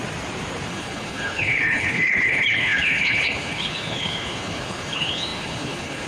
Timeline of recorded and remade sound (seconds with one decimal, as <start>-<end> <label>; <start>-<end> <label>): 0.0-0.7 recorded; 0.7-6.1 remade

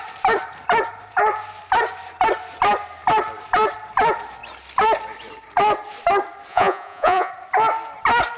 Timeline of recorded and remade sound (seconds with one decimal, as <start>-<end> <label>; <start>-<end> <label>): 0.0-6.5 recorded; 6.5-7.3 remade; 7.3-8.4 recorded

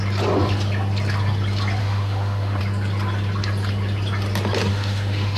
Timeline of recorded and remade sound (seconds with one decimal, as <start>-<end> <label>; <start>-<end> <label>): 0.0-1.8 recorded; 1.8-2.6 remade; 2.6-4.7 recorded; 4.7-5.4 remade

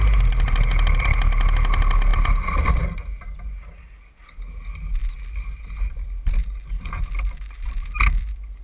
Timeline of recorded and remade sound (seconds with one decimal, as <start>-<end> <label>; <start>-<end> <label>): 0.0-8.6 recorded

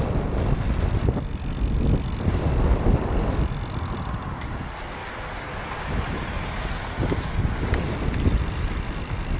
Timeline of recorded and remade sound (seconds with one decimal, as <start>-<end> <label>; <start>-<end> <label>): 0.0-9.4 recorded